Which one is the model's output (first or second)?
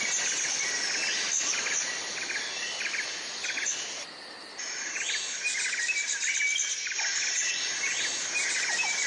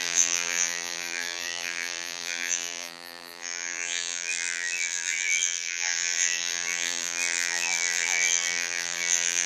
second